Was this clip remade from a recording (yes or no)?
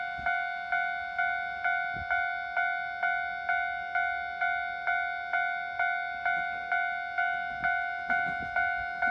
no